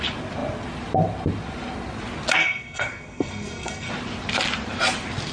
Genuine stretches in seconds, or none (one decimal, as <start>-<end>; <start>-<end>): 0.0-2.4; 3.9-5.3